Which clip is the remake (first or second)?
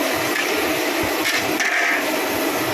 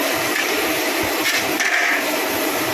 second